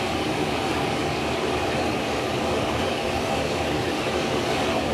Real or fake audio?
fake